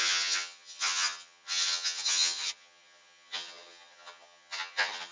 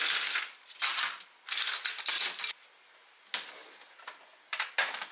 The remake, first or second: first